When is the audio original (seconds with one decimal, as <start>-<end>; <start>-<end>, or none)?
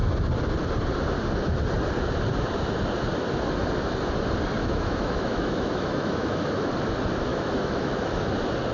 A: 0.0-4.6; 6.7-7.3; 8.2-8.7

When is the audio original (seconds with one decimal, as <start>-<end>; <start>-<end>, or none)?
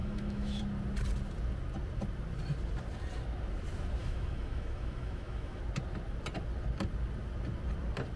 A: 0.6-4.0; 5.6-8.2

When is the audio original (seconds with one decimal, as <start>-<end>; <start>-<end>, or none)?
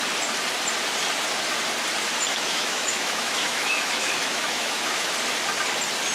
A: 0.0-2.3; 5.1-6.1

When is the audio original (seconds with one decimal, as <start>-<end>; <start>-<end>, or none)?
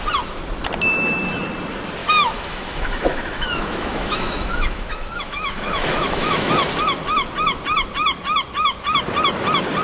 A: 0.0-2.0; 6.5-9.8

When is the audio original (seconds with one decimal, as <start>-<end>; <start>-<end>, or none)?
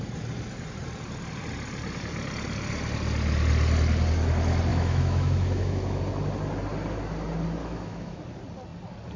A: 0.0-4.7; 6.0-7.6; 8.2-9.2